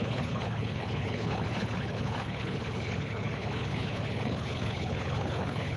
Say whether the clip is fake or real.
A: fake